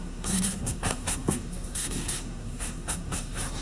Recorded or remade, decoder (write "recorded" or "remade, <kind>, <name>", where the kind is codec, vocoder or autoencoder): remade, codec, SNAC